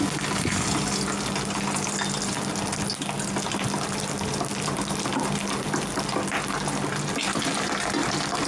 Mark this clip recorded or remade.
recorded